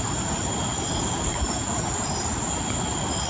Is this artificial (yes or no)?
no